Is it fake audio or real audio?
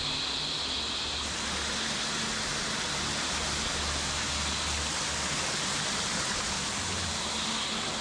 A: real